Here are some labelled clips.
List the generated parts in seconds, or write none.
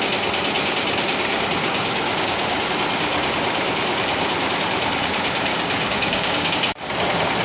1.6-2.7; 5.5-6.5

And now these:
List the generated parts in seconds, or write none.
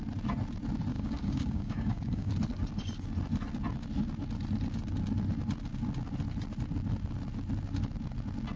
0.9-2.3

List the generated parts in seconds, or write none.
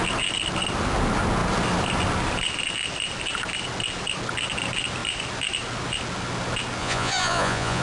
6.8-7.8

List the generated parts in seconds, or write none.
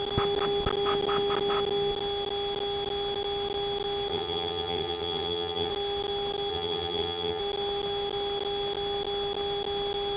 4.1-5.7; 6.5-7.4